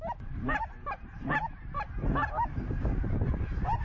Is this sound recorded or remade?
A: remade